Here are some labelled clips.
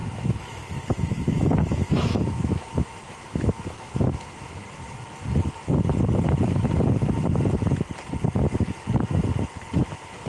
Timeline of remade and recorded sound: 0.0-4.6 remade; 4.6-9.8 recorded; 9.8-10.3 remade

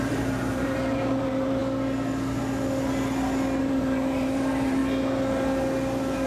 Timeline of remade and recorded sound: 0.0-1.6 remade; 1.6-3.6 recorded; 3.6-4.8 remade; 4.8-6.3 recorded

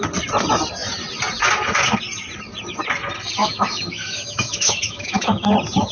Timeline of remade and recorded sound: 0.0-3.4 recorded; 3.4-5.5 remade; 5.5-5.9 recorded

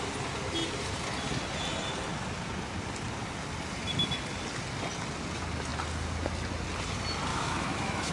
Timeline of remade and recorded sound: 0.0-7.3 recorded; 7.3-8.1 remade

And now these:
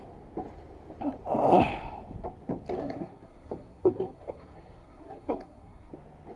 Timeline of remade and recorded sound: 0.0-2.8 recorded; 2.8-5.9 remade; 5.9-6.4 recorded

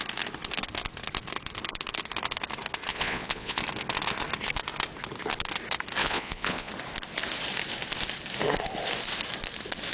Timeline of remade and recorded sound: 0.0-2.9 recorded; 2.9-3.6 remade; 3.6-6.0 recorded; 6.0-6.7 remade; 6.7-9.9 recorded

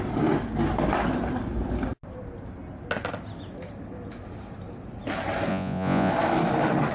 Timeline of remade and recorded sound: 0.0-5.5 recorded; 5.5-6.1 remade; 6.1-6.9 recorded